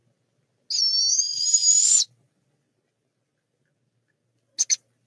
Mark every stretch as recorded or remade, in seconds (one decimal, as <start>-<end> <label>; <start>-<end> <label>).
0.0-5.1 recorded